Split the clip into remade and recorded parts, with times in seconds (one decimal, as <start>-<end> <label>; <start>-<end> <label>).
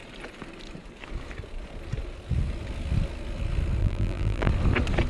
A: 0.0-3.8 recorded; 3.8-4.5 remade; 4.5-5.1 recorded